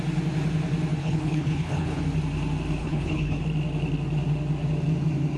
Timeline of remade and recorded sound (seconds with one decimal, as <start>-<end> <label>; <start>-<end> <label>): 0.0-1.0 recorded; 1.0-2.0 remade; 2.0-2.8 recorded; 2.8-3.4 remade; 3.4-5.4 recorded